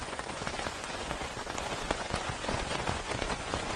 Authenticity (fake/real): fake